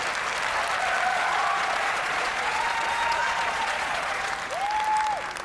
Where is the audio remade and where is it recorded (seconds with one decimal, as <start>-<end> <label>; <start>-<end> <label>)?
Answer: 0.0-1.1 recorded; 1.1-4.3 remade; 4.3-5.4 recorded